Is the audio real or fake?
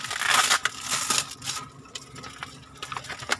real